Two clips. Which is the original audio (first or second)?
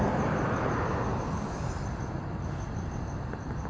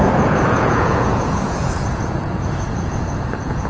first